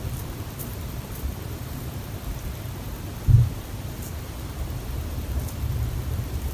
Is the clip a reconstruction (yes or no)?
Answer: yes